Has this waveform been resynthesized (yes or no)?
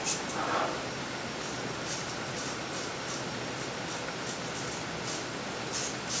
no